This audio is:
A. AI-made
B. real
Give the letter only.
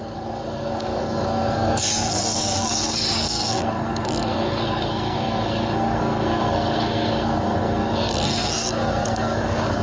A